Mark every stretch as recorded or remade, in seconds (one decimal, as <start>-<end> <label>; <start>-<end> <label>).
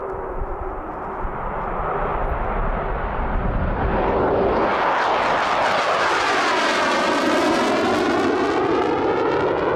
0.0-9.8 recorded